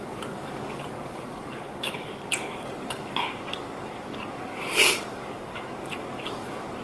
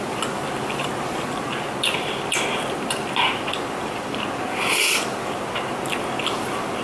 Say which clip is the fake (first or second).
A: first